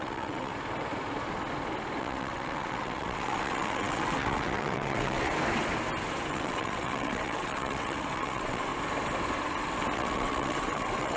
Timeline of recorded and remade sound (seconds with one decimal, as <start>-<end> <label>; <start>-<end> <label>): 0.0-0.5 remade; 0.5-2.0 recorded; 2.0-5.3 remade; 5.3-6.3 recorded; 6.3-8.7 remade; 8.7-9.9 recorded; 9.9-11.2 remade